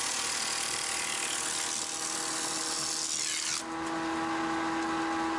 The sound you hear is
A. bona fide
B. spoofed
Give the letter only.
A